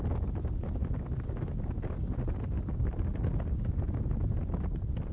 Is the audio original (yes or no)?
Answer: yes